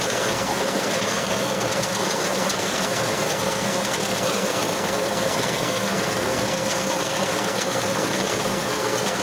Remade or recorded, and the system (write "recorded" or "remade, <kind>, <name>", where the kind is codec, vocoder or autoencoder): remade, codec, SNAC